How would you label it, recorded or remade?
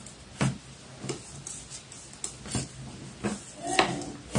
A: recorded